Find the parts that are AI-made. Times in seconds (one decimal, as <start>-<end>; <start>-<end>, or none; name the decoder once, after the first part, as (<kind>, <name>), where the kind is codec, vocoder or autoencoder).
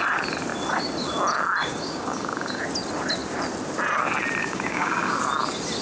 1.6-2.6 (codec, DAC); 4.4-5.2